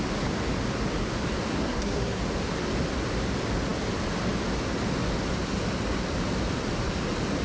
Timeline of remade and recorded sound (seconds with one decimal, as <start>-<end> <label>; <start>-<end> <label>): 0.0-1.5 recorded; 1.5-2.2 remade; 2.2-7.4 recorded